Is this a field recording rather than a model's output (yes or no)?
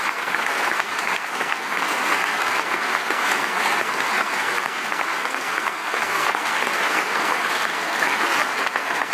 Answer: no